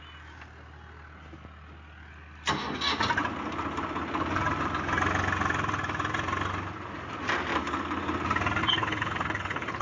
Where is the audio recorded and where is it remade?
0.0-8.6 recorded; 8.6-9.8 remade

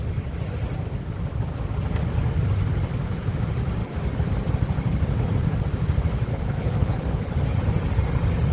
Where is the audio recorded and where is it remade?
0.0-6.3 recorded; 6.3-7.3 remade; 7.3-8.5 recorded

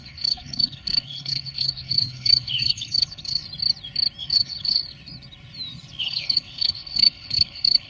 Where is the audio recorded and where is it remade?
0.0-3.4 remade; 3.4-4.2 recorded; 4.2-4.8 remade; 4.8-6.0 recorded; 6.0-7.9 remade

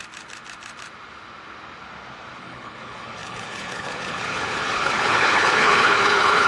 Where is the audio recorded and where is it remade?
0.0-2.4 recorded; 2.4-6.5 remade